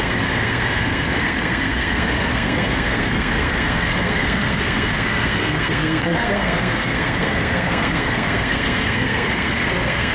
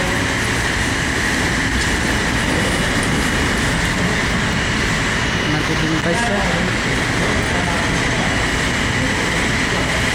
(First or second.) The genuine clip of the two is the second